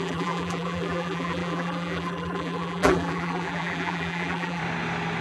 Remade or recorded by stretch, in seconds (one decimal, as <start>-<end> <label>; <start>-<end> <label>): 0.0-4.6 remade; 4.6-5.2 recorded